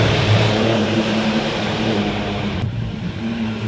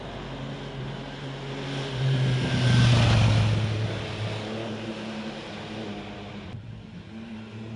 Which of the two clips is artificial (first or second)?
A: first